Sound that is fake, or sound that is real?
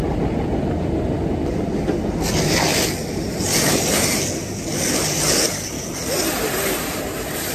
real